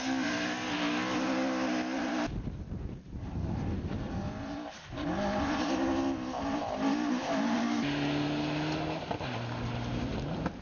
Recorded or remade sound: recorded